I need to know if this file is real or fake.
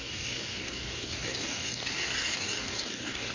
fake